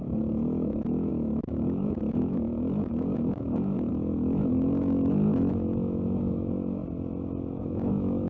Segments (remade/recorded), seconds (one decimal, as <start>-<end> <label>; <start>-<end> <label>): 0.0-6.8 remade; 6.8-7.6 recorded; 7.6-8.3 remade